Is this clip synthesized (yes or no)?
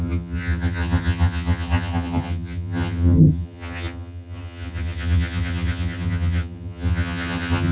yes